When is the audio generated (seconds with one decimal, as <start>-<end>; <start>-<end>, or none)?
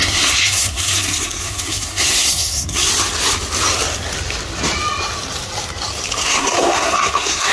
0.0-2.9; 6.2-7.5